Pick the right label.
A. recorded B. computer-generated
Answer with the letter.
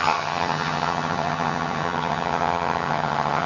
B